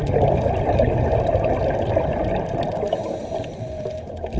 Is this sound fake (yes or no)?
no